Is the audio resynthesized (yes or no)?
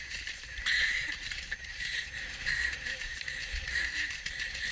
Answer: yes